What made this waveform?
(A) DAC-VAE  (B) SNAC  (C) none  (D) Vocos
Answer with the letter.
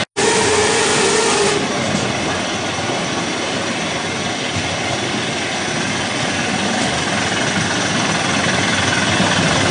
C